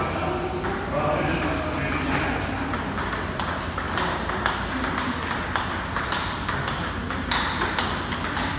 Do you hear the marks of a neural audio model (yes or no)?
no